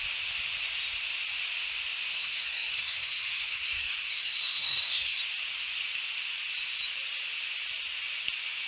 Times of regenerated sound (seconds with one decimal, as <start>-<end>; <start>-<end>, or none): 2.1-5.2